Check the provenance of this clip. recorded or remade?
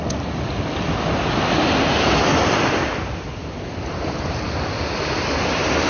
recorded